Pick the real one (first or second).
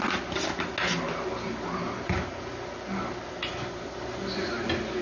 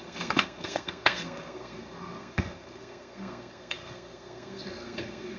first